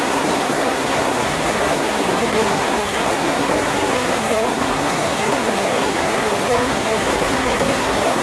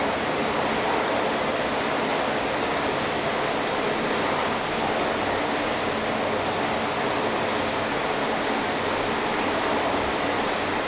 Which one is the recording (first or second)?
second